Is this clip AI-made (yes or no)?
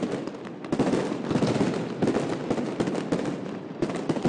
no